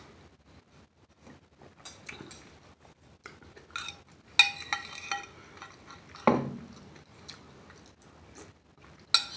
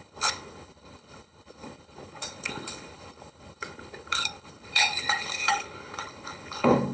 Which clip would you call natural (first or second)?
first